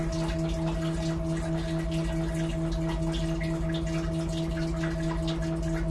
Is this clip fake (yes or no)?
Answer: no